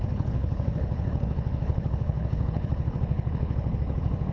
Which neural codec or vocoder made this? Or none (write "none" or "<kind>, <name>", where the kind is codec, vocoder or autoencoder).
codec, HILCodec